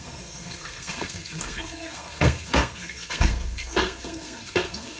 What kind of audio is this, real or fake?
fake